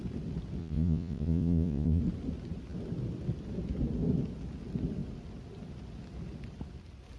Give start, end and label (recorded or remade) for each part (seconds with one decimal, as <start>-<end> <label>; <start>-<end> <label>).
0.0-0.6 recorded; 0.6-2.0 remade; 2.0-7.2 recorded